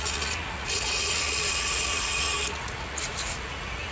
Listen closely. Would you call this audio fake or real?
fake